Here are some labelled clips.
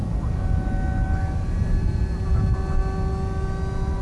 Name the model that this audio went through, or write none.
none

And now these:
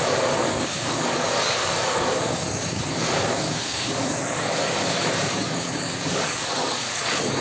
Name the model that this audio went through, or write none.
codec, DAC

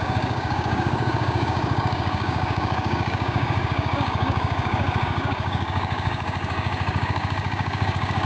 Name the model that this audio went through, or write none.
codec, DAC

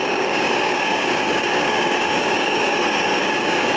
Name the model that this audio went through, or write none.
codec, DAC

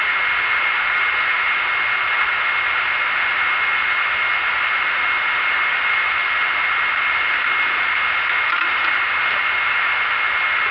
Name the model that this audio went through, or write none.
none